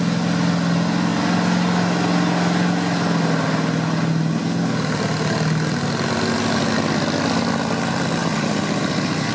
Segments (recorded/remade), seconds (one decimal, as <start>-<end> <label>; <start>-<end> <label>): 0.0-8.2 recorded; 8.2-9.3 remade